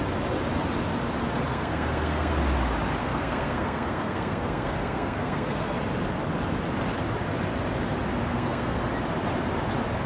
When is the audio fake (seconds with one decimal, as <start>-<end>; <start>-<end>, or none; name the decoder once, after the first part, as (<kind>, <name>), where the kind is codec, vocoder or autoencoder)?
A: 1.5-2.3 (codec, SNAC); 3.0-5.8; 8.3-8.9